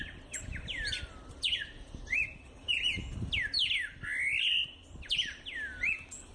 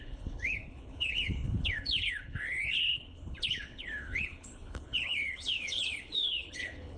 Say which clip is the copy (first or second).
second